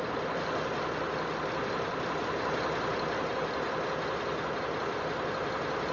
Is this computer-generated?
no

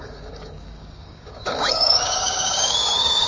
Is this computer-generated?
yes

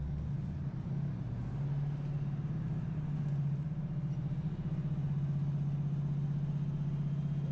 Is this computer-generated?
no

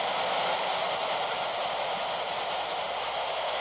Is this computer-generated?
no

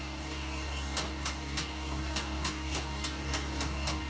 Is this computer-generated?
yes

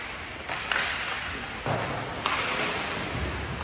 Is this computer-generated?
no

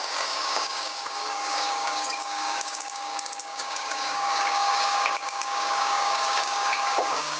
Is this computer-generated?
yes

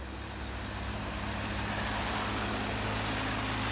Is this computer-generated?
no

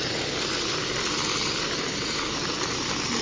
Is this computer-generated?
no